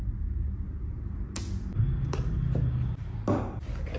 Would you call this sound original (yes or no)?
yes